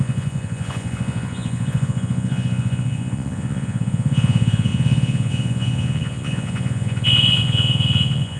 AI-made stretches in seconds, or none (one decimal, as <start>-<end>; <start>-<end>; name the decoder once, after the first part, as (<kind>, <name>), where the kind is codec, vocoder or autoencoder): 0.0-8.4 (vocoder, Vocos)

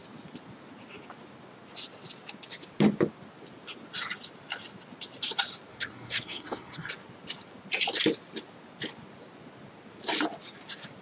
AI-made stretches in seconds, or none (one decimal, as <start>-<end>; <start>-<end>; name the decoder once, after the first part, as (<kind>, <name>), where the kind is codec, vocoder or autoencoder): 5.7-6.9 (codec, SNAC)

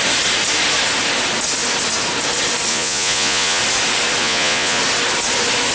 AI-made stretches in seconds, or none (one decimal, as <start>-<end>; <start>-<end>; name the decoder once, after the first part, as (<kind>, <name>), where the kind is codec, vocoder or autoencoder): 2.7-3.6 (vocoder, Vocos); 4.2-4.8

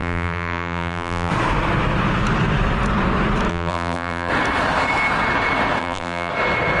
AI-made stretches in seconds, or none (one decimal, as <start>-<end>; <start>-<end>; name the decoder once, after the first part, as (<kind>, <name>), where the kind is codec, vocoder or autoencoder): 0.0-1.3 (vocoder, BigVGAN v2); 3.5-4.3; 5.8-6.3